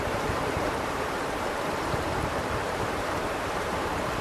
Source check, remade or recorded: remade